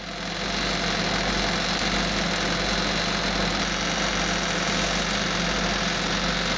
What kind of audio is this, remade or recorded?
recorded